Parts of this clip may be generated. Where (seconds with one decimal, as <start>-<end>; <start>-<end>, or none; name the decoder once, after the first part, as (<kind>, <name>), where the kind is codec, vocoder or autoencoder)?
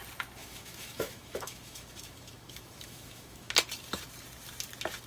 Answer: 0.4-3.5 (autoencoder, DAC-VAE)